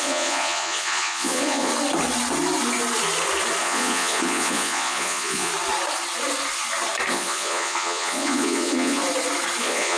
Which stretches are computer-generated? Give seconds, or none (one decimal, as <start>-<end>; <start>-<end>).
0.0-1.7; 3.6-5.5; 7.1-9.0; 9.6-10.0